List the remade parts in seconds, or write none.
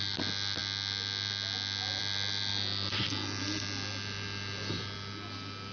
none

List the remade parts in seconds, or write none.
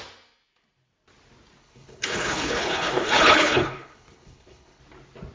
1.6-4.8 (codec, HILCodec)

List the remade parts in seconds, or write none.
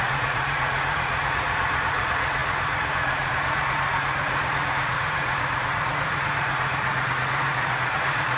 0.0-8.4 (vocoder, Vocos)